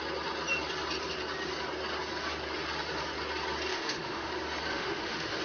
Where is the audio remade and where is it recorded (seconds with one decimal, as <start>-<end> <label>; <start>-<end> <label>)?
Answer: 0.0-3.7 recorded; 3.7-4.3 remade; 4.3-4.7 recorded; 4.7-5.4 remade